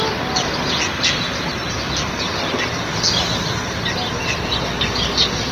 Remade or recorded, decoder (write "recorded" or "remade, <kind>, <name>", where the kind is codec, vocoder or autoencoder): recorded